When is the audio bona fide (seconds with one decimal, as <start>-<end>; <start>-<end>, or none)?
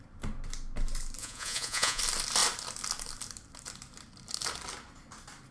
0.0-1.2; 2.0-5.5